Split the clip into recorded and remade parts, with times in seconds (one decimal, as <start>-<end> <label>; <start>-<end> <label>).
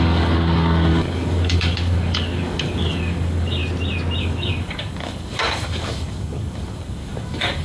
0.0-3.6 remade; 3.6-4.2 recorded; 4.2-7.6 remade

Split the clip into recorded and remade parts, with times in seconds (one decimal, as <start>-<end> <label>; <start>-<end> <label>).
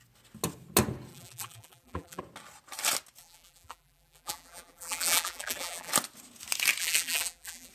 0.0-1.1 recorded; 1.1-2.2 remade; 2.2-3.2 recorded; 3.2-5.9 remade; 5.9-6.8 recorded; 6.8-7.7 remade